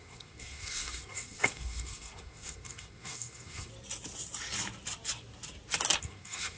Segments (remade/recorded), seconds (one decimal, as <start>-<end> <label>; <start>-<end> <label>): 0.0-3.7 remade; 3.7-6.0 recorded; 6.0-6.6 remade